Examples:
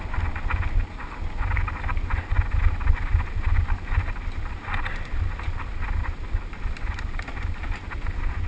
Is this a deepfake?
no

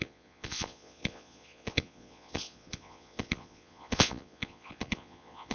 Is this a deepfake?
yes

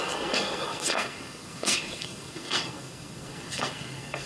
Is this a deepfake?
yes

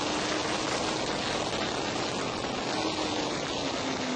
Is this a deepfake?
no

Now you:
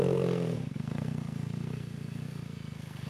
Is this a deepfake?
yes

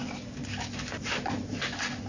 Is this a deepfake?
no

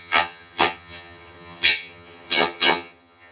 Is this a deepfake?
yes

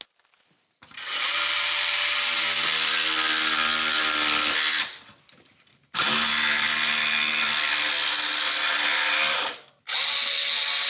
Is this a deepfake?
no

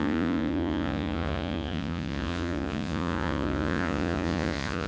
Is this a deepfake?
yes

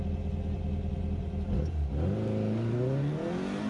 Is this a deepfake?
no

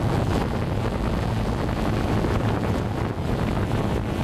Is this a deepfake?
no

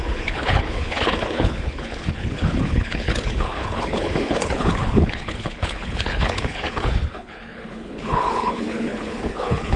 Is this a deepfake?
yes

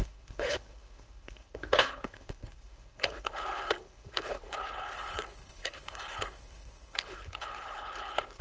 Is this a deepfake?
yes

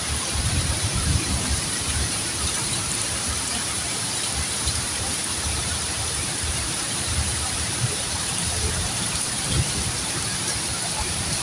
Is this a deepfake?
yes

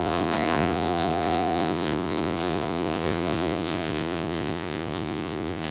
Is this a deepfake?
yes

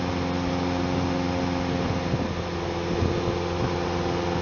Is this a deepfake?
no